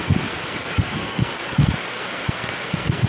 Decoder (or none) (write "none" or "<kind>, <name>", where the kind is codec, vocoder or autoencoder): codec, SNAC